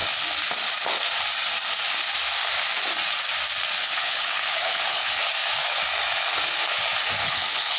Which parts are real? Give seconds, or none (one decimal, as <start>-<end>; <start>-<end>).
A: 0.0-3.8; 5.2-7.2